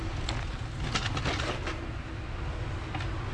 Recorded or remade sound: recorded